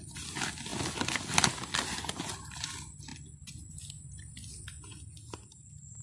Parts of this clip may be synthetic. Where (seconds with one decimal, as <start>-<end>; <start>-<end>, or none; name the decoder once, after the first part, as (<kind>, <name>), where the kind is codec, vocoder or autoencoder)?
none